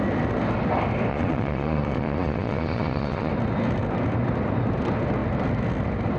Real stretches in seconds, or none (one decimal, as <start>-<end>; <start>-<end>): 0.0-1.1; 3.3-6.2